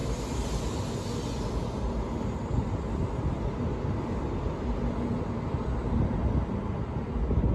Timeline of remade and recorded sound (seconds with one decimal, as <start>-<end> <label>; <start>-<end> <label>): 0.0-7.5 recorded